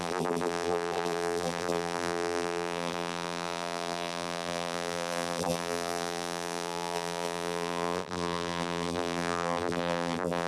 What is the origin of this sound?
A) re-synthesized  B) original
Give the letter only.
A